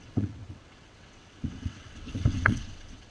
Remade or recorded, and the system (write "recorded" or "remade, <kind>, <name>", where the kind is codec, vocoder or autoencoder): remade, vocoder, WaveNeXt